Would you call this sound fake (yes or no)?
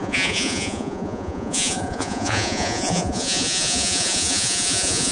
yes